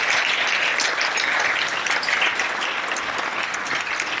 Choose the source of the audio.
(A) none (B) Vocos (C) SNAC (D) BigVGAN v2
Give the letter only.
A